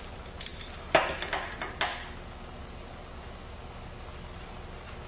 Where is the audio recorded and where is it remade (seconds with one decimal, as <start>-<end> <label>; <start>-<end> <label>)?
0.0-5.1 recorded